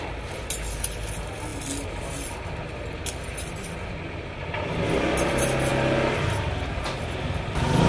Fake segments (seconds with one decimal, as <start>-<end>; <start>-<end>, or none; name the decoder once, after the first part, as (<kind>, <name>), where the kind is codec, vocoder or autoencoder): none